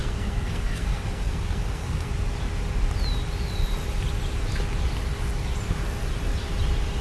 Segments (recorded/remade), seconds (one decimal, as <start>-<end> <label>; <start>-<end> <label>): 0.0-2.1 remade; 2.1-7.0 recorded